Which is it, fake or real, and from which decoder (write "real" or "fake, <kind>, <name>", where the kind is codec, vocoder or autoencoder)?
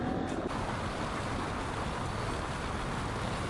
real